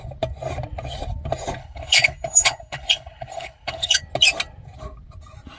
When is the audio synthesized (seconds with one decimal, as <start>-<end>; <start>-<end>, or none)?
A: 1.6-4.0